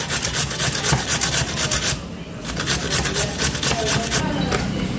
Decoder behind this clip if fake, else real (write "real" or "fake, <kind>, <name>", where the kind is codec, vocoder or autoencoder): real